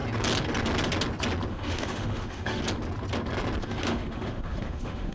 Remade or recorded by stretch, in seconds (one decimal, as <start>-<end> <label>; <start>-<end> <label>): 0.0-1.5 recorded; 1.5-2.6 remade; 2.6-3.6 recorded; 3.6-5.1 remade